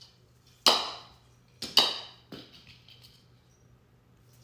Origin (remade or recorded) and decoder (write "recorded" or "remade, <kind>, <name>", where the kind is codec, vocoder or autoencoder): recorded